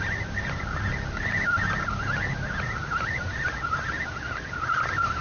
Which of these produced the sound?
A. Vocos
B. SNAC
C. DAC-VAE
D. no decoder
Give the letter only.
D